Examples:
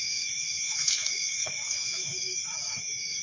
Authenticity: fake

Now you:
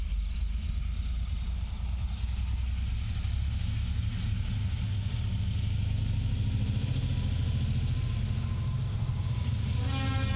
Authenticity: real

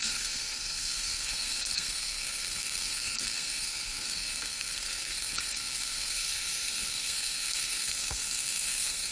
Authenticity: fake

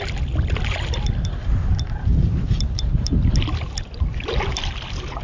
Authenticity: real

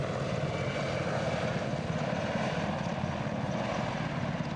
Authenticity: real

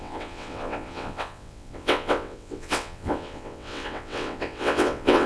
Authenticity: fake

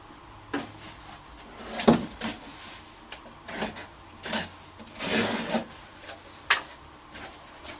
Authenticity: real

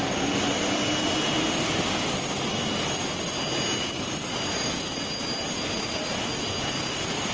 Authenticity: real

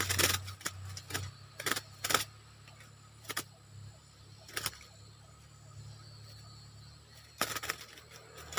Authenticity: real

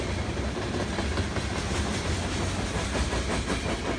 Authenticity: real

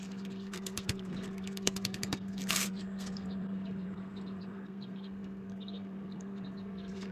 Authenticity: fake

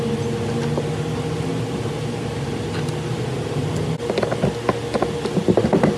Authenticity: real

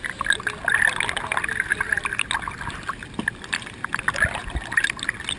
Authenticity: real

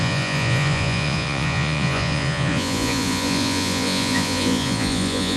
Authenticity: fake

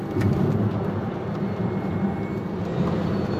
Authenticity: real